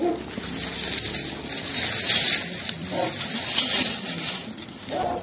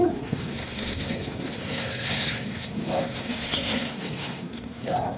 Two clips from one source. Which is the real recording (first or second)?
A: first